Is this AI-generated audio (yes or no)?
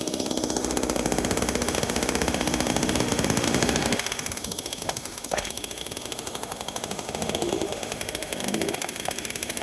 yes